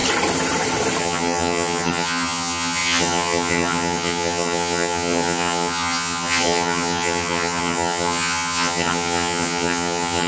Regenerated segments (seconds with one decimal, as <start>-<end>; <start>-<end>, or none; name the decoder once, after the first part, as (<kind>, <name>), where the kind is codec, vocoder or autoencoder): 1.0-10.3 (vocoder, HiFi-GAN)